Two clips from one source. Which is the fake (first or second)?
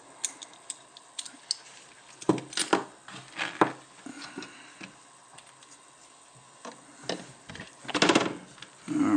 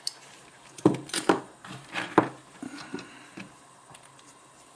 second